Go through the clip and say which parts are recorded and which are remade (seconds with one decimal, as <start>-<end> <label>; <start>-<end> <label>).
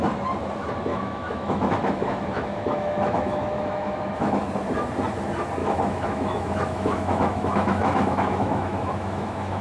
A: 0.0-0.9 recorded; 0.9-4.4 remade; 4.4-5.6 recorded; 5.6-9.6 remade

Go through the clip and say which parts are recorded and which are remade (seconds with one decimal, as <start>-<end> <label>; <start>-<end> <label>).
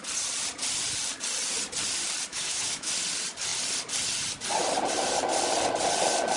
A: 0.0-2.3 recorded; 2.3-2.9 remade; 2.9-6.4 recorded